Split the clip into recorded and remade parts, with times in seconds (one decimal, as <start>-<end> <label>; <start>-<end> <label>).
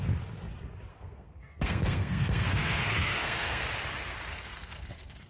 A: 0.0-0.9 recorded; 0.9-3.7 remade; 3.7-4.3 recorded; 4.3-5.3 remade